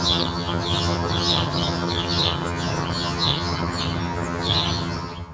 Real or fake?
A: fake